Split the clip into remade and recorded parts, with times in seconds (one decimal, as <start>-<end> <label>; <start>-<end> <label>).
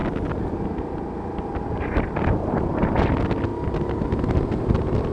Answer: 0.0-5.1 recorded